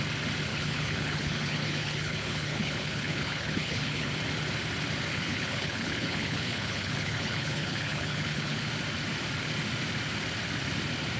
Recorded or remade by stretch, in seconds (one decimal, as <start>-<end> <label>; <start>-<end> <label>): 0.0-0.5 recorded; 0.5-4.1 remade; 4.1-5.1 recorded; 5.1-8.7 remade; 8.7-11.2 recorded